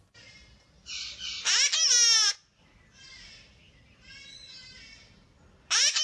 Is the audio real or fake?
real